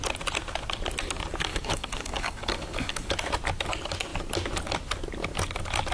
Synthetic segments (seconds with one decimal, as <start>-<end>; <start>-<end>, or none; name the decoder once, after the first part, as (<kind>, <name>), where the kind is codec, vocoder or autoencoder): 1.5-3.1 (codec, DAC)